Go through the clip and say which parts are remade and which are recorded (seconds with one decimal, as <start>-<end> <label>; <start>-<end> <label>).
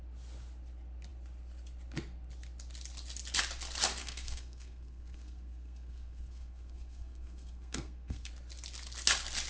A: 0.0-4.0 recorded; 4.0-8.3 remade; 8.3-9.5 recorded